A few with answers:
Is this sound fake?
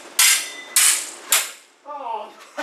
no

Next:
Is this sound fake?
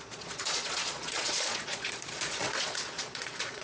yes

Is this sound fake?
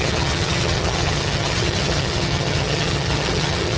yes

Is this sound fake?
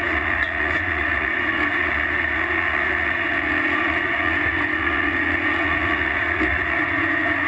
yes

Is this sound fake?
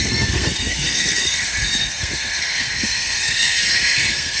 yes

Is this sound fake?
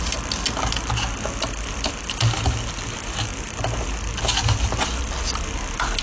no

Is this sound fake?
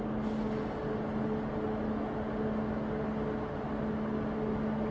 no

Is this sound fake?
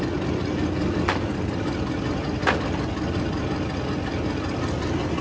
no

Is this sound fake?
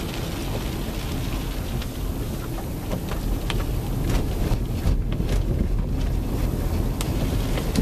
no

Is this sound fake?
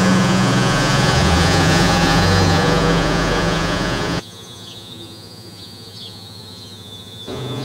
yes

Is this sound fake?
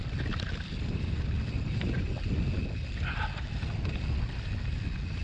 no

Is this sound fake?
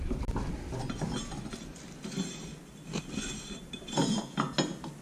no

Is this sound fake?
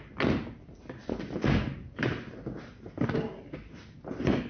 no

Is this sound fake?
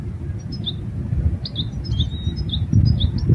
no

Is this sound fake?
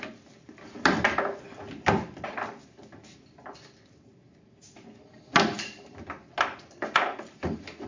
no